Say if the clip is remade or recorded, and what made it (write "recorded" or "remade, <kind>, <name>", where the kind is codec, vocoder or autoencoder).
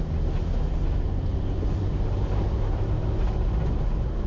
recorded